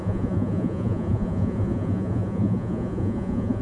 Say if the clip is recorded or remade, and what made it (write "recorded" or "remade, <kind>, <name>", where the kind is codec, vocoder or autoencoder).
remade, vocoder, Vocos